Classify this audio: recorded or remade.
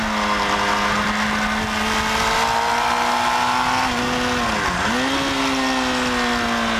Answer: recorded